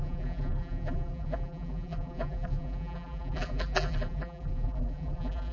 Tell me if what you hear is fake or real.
fake